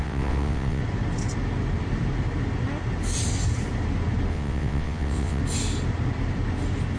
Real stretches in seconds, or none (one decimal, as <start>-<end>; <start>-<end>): 0.8-4.3; 5.4-7.0